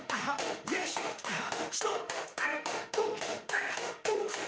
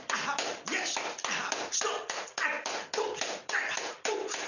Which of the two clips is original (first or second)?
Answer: second